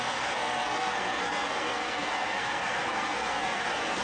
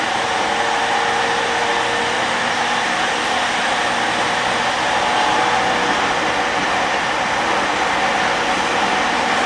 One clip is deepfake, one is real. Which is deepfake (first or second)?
first